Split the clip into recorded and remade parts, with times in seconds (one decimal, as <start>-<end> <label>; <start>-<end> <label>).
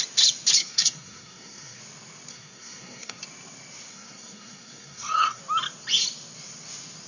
0.0-0.6 recorded; 0.6-1.8 remade; 1.8-2.3 recorded; 2.3-3.2 remade; 3.2-3.9 recorded; 3.9-5.4 remade; 5.4-7.1 recorded